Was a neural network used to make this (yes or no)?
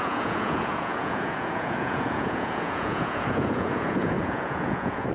yes